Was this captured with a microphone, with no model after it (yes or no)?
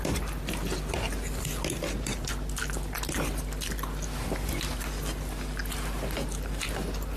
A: yes